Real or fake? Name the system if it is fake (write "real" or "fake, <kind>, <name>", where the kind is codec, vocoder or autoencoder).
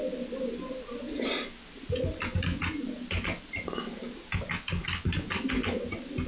real